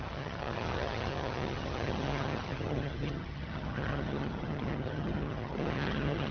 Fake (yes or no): yes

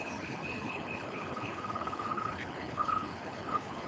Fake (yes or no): yes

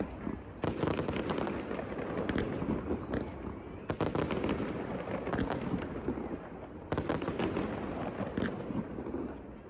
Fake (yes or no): no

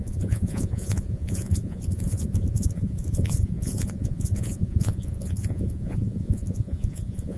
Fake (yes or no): yes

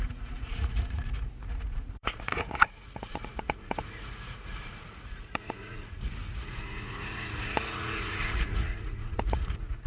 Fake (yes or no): yes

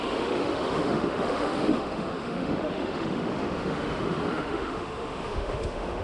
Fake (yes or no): yes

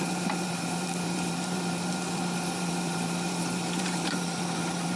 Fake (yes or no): yes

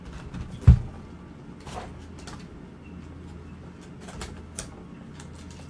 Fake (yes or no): no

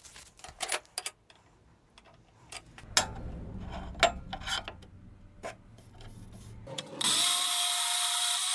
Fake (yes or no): no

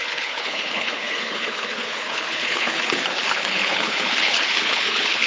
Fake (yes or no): yes